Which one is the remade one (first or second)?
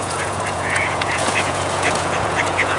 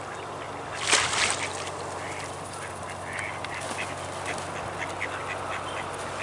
first